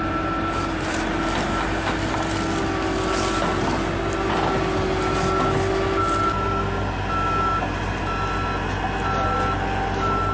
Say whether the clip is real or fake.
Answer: real